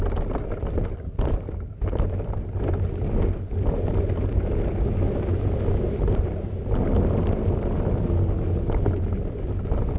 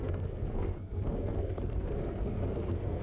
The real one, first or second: first